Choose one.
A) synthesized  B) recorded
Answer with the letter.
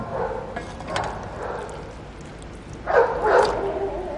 B